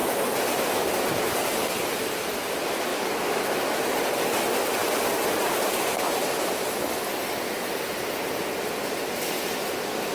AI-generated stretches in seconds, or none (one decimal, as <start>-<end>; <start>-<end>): 2.9-3.8